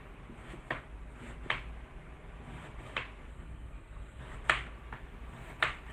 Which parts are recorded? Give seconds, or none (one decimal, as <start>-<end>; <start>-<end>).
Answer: 0.0-3.3; 4.2-5.9